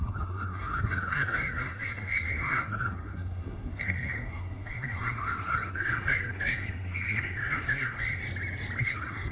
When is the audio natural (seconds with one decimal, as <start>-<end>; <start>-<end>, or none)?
8.2-8.8